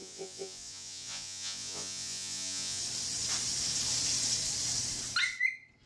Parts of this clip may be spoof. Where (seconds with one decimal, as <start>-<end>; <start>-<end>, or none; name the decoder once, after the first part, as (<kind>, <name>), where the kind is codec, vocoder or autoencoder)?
0.0-2.8 (vocoder, Vocos)